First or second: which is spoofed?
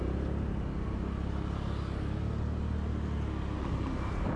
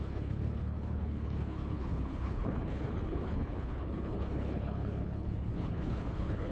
second